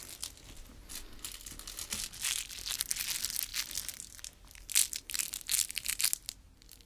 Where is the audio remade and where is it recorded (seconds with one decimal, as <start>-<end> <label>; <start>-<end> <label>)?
0.0-6.9 recorded